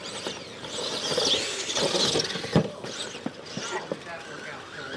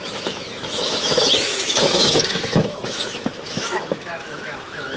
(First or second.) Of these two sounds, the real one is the first